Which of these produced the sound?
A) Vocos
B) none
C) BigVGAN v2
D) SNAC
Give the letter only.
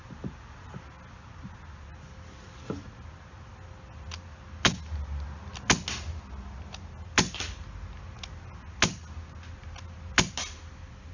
B